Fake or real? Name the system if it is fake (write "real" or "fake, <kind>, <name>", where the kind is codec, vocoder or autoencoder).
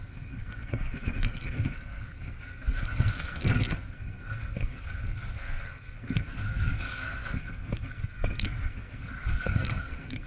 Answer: fake, codec, SNAC